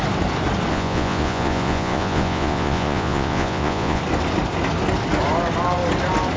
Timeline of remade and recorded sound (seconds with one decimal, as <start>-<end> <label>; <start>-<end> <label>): 0.0-0.7 recorded; 0.7-4.0 remade; 4.0-6.4 recorded